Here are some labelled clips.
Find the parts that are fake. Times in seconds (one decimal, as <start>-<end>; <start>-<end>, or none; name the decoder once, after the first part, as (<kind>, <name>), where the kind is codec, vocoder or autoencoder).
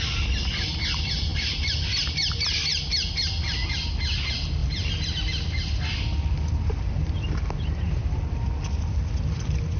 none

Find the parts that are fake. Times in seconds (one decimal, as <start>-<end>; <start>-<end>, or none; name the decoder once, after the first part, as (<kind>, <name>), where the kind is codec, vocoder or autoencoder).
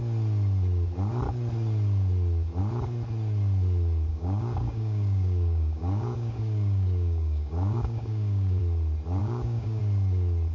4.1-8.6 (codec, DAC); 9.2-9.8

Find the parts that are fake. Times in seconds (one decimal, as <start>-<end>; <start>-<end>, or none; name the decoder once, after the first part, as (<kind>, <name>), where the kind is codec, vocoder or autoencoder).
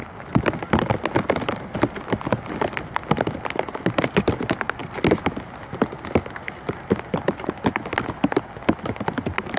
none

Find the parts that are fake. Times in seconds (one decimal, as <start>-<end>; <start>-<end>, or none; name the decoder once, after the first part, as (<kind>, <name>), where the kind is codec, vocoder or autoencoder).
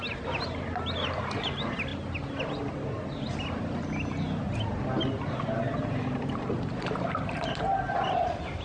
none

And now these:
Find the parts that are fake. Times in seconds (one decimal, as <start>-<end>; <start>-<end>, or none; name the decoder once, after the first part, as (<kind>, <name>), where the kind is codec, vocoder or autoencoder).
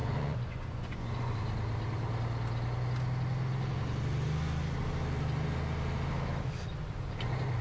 0.0-1.3 (vocoder, Vocos)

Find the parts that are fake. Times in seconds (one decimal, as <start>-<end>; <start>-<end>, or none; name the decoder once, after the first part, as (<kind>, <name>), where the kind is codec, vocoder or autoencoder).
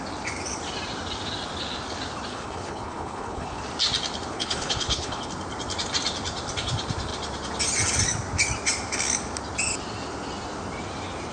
2.3-3.6 (codec, HILCodec); 4.3-5.3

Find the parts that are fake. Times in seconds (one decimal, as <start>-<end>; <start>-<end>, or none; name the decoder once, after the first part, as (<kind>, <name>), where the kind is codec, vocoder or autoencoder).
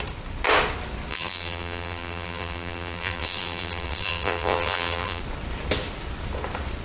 1.1-5.2 (vocoder, BigVGAN v2)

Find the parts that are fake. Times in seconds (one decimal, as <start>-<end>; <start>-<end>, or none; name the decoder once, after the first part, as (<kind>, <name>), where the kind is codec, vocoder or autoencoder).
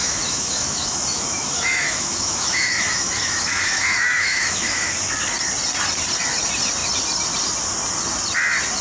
0.0-4.9 (autoencoder, DAC-VAE)